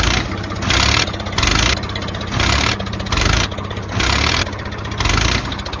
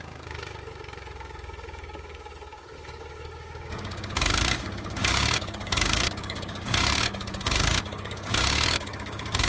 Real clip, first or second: first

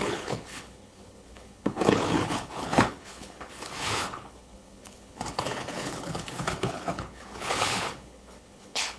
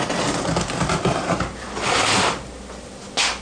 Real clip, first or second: second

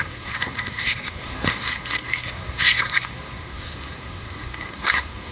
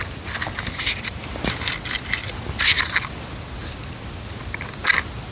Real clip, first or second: second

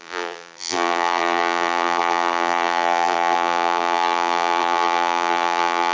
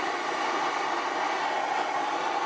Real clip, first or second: second